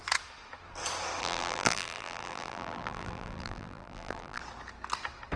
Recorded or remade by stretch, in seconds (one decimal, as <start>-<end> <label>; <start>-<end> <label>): 0.0-1.2 recorded; 1.2-4.4 remade; 4.4-5.4 recorded